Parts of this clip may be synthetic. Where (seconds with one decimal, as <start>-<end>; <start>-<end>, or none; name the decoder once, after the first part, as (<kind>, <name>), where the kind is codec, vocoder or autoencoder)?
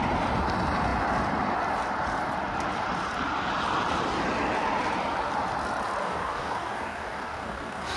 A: 6.0-8.0 (codec, DAC)